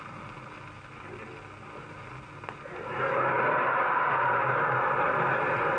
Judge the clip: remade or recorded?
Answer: recorded